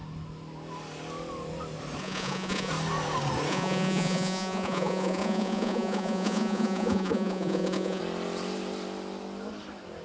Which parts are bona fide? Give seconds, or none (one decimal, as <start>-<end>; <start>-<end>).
0.0-2.0; 2.7-3.5; 8.0-10.0